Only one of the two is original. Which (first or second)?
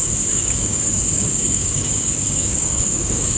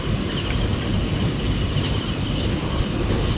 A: second